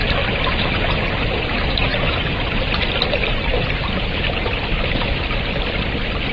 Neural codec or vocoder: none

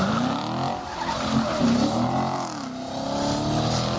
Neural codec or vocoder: none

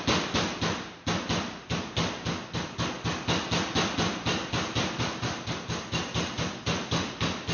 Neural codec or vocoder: none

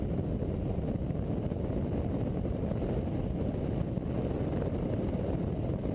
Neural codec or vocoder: none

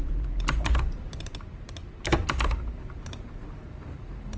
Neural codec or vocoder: vocoder, BigVGAN v2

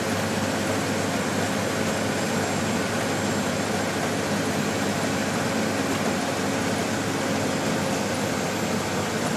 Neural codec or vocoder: none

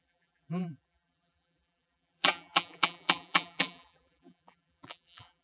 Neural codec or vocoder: vocoder, BigVGAN v2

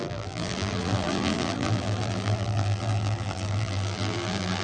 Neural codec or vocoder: vocoder, BigVGAN v2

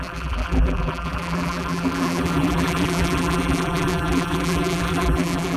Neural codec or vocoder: vocoder, BigVGAN v2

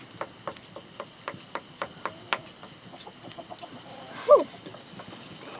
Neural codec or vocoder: none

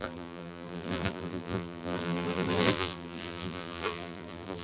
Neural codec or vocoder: vocoder, BigVGAN v2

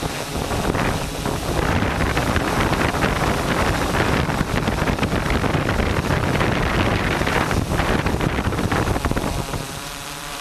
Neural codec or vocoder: vocoder, BigVGAN v2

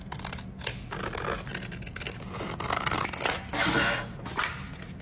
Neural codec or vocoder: none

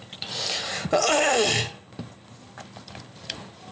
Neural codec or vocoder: vocoder, BigVGAN v2